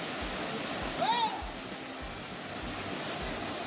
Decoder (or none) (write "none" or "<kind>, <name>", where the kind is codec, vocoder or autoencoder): none